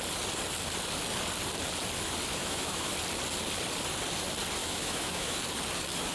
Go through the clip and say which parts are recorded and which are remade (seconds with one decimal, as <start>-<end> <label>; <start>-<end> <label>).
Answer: 0.0-2.3 recorded; 2.3-2.9 remade; 2.9-4.6 recorded; 4.6-5.4 remade; 5.4-6.1 recorded